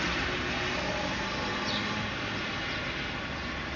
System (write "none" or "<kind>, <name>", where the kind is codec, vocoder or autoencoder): none